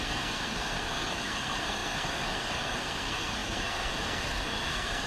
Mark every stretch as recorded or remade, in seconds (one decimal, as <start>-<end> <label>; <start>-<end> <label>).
0.0-5.1 remade